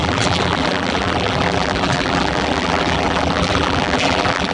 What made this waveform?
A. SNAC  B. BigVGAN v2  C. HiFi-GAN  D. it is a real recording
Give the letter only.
B